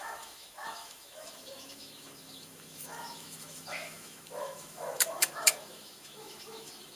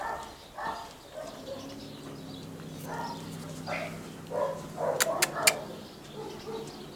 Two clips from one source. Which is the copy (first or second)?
first